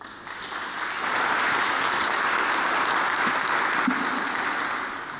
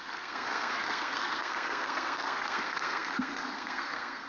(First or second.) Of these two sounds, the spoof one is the second